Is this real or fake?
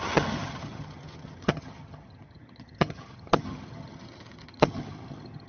fake